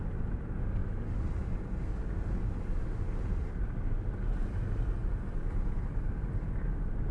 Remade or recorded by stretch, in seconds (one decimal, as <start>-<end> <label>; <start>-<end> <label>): 0.0-7.1 recorded